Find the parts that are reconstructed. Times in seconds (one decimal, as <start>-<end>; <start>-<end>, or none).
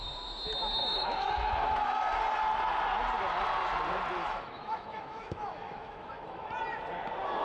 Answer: 0.8-2.2; 4.2-6.5